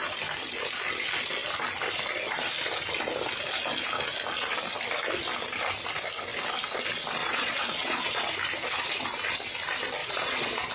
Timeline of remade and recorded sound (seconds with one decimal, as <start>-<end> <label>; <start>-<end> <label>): 0.0-7.2 recorded; 7.2-8.2 remade; 8.2-10.0 recorded; 10.0-10.7 remade